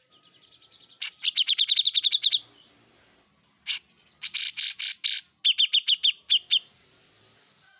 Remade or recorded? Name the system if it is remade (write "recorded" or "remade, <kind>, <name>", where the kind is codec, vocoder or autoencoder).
recorded